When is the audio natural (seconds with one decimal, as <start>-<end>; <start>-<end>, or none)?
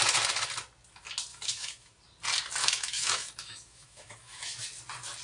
0.0-1.3; 2.0-2.6; 4.6-5.2